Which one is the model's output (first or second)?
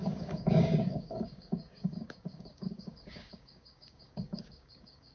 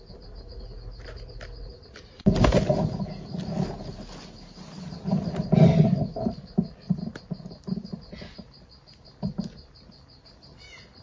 first